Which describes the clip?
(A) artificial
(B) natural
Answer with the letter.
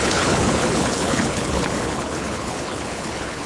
A